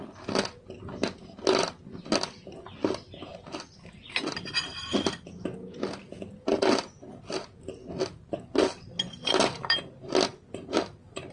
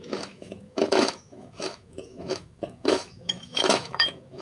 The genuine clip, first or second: first